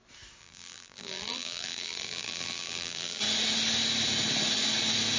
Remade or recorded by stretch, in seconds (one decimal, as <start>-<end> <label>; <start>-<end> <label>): 0.0-0.4 recorded; 0.4-3.2 remade; 3.2-5.2 recorded